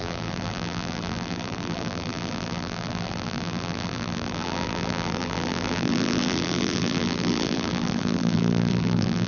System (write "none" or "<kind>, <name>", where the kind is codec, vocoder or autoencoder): vocoder, BigVGAN v2